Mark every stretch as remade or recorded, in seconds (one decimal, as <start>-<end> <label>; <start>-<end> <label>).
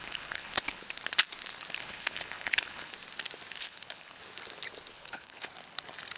0.0-0.8 remade; 0.8-1.8 recorded; 1.8-2.9 remade; 2.9-3.6 recorded; 3.6-4.2 remade; 4.2-4.9 recorded; 4.9-5.5 remade; 5.5-6.2 recorded